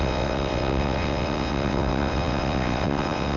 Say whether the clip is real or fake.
fake